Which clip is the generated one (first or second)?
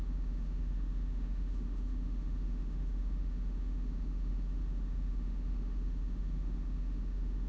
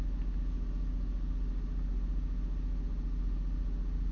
first